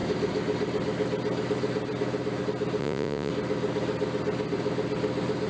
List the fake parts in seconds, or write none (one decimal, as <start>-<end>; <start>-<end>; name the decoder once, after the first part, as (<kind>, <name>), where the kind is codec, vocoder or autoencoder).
2.8-3.3 (vocoder, Vocos)